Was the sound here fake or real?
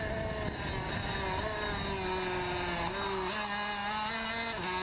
real